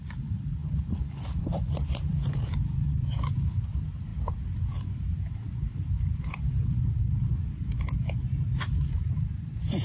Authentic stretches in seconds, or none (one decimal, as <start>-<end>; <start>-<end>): none

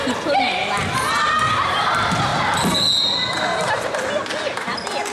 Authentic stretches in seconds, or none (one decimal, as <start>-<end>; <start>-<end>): 0.0-5.1

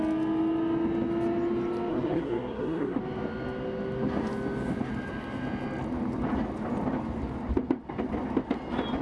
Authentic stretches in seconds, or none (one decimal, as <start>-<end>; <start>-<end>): 0.0-1.9; 3.0-9.0

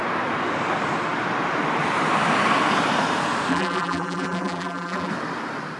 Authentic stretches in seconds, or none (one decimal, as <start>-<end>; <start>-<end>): 0.0-3.5; 5.1-5.8